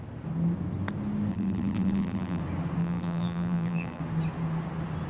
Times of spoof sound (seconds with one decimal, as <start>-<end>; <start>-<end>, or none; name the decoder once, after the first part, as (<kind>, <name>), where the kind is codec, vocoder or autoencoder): 1.3-2.4 (vocoder, BigVGAN v2); 2.8-4.0